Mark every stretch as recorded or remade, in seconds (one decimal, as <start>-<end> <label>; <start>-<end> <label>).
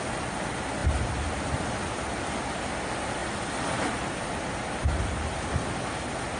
0.0-6.4 recorded